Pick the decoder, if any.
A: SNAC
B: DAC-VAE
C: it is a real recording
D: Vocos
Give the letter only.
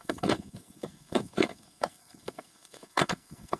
A